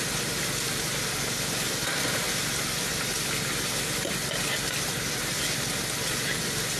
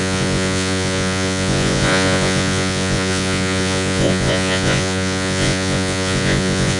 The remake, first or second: second